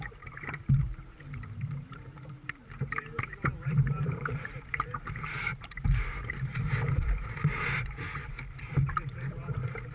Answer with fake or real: fake